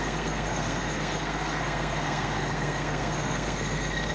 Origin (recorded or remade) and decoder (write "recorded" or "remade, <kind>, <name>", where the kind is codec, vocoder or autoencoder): remade, codec, SNAC